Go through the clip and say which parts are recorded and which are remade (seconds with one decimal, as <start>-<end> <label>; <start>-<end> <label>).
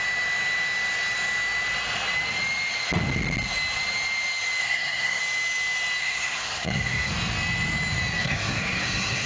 0.0-4.6 recorded; 4.6-5.2 remade; 5.2-6.0 recorded; 6.0-7.1 remade; 7.1-8.2 recorded; 8.2-9.3 remade